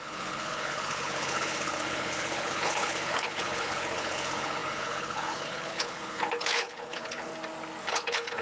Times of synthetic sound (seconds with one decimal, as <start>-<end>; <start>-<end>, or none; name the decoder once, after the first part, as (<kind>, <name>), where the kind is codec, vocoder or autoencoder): 0.0-7.3 (codec, HILCodec); 7.8-8.4